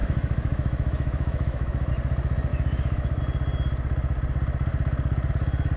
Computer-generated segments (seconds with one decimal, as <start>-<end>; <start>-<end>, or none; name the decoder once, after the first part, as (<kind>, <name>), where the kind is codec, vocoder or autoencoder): 0.0-1.9 (autoencoder, DAC-VAE); 2.5-3.2